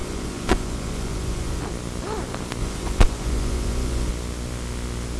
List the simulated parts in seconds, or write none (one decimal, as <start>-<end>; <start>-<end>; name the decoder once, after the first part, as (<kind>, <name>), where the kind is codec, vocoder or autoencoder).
0.0-1.6 (vocoder, Vocos); 2.6-4.1